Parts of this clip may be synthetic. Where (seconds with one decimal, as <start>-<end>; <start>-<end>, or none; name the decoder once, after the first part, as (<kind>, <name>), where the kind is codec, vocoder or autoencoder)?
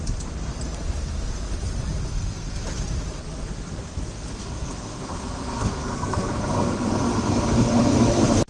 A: 2.1-2.6 (codec, SNAC); 4.4-6.9